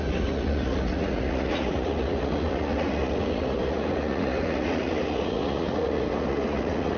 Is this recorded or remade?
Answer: remade